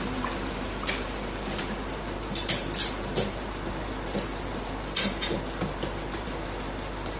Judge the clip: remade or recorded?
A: remade